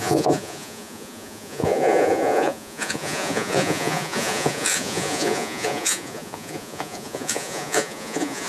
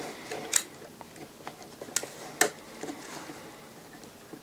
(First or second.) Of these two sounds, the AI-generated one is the first